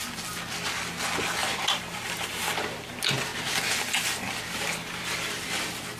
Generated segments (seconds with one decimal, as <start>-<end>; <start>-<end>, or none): 1.4-2.4